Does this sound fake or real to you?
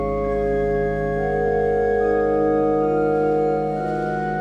real